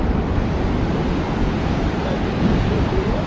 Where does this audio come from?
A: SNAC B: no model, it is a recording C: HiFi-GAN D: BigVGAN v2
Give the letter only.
D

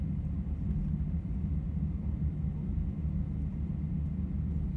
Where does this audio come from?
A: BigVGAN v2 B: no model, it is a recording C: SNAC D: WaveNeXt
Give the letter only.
B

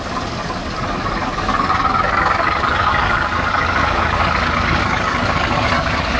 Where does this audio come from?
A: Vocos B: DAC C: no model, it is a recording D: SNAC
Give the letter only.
B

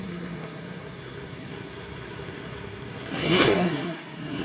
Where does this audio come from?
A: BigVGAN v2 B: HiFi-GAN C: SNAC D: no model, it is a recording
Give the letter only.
C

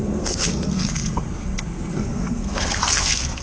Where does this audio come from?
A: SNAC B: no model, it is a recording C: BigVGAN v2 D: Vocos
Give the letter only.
A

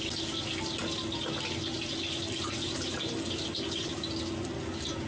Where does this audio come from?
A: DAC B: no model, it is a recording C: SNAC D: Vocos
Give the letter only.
B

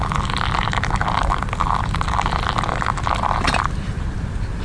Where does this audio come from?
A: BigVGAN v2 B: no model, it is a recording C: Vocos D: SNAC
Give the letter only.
B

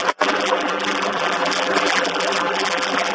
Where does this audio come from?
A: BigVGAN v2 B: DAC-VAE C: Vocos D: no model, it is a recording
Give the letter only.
A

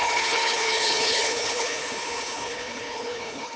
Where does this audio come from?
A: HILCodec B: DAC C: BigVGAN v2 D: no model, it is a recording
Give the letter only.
A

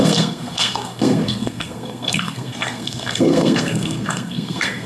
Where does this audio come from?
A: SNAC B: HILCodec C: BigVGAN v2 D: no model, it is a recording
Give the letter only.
A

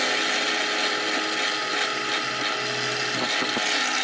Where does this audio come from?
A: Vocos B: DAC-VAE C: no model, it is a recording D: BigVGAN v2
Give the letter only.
C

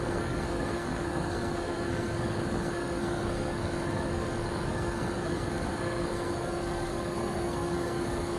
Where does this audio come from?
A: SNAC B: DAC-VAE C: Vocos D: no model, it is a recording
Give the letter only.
A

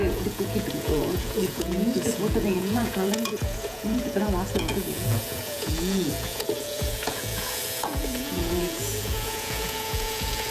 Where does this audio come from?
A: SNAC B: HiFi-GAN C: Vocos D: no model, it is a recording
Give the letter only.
C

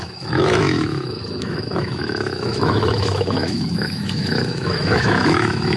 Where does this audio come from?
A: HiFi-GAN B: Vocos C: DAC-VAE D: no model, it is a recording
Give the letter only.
C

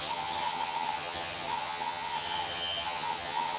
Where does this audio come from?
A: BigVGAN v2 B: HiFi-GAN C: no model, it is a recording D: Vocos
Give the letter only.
B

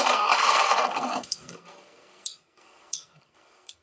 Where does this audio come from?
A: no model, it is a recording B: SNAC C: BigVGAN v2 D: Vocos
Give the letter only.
B